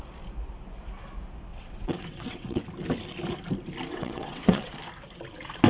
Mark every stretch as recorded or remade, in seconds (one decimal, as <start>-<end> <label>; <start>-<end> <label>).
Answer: 0.0-1.5 recorded; 1.5-2.6 remade; 2.6-3.9 recorded; 3.9-4.7 remade; 4.7-5.7 recorded